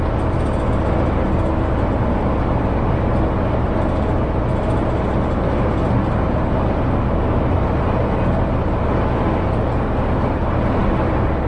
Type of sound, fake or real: real